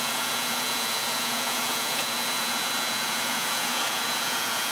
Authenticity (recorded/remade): remade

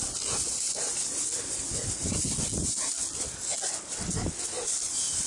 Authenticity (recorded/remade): recorded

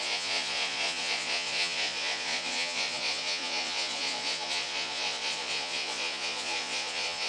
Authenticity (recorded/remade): remade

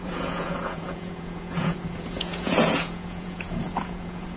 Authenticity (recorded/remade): remade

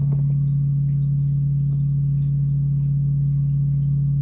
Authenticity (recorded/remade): recorded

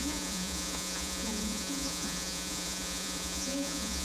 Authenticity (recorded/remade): remade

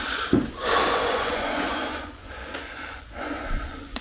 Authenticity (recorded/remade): remade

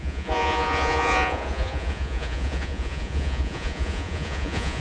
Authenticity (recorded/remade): remade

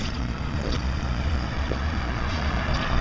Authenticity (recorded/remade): remade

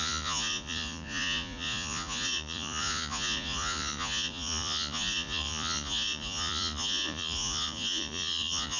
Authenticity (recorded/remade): remade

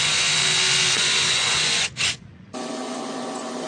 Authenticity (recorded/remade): remade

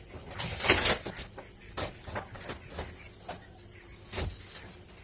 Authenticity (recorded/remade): recorded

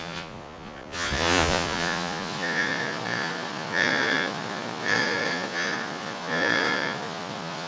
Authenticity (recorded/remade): remade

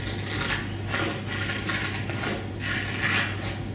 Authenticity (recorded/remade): recorded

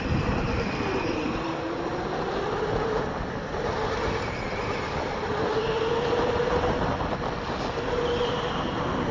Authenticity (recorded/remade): recorded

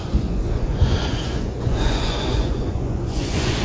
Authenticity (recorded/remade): remade